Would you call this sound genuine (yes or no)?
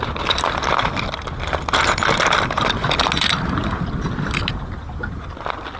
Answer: yes